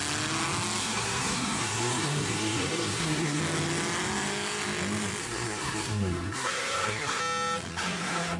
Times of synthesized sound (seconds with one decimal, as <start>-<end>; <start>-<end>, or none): 0.8-3.4; 5.2-7.2; 7.7-8.4